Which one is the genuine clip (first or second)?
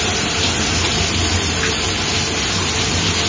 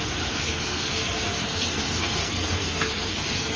first